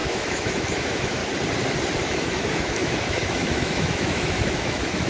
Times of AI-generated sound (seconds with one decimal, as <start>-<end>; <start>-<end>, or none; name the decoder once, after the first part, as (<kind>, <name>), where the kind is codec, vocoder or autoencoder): 0.0-1.2 (autoencoder, DAC-VAE); 2.0-5.1

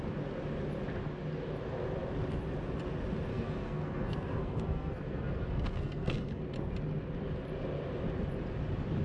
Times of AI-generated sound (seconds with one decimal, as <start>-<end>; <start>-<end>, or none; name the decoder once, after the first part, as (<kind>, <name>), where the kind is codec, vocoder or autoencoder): 3.3-6.4 (codec, SNAC)

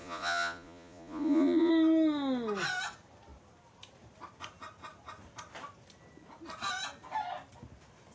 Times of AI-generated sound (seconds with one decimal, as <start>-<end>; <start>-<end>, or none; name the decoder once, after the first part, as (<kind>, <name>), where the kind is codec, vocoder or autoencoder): 0.0-1.7 (vocoder, Vocos)

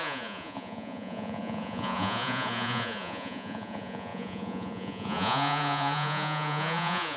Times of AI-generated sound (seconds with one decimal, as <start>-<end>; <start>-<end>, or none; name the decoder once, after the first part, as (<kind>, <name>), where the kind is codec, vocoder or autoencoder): 0.0-7.2 (vocoder, Vocos)

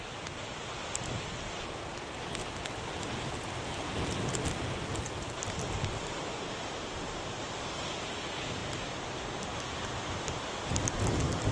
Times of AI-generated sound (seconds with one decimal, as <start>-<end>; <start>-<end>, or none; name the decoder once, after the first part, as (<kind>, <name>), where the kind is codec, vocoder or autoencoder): 2.4-6.3 (vocoder, BigVGAN v2); 8.6-9.2

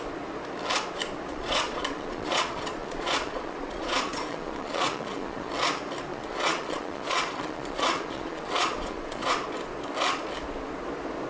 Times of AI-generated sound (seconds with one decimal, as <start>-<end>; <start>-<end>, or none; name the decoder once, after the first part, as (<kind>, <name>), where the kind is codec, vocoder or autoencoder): 1.3-5.5 (vocoder, Vocos); 6.1-9.3

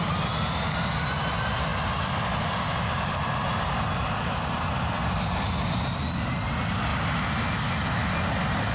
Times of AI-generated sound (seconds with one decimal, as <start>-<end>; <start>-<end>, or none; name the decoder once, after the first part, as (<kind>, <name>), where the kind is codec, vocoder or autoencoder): none

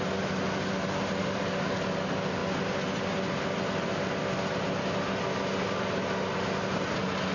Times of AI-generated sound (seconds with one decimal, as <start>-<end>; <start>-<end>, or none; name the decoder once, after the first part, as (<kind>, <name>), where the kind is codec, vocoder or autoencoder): 1.2-1.8 (codec, DAC)